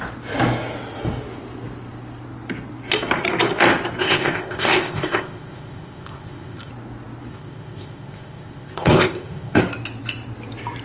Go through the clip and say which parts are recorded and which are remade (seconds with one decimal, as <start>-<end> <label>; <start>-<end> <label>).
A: 0.0-4.0 recorded; 4.0-6.7 remade; 6.7-7.3 recorded; 7.3-9.6 remade; 9.6-10.8 recorded